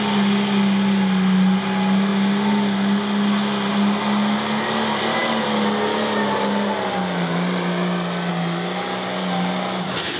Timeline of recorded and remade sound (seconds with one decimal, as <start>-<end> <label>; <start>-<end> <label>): 0.0-10.2 recorded